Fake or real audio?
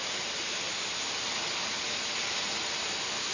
real